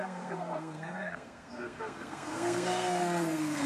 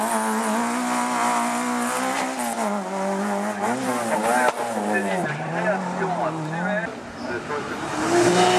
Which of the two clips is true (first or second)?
second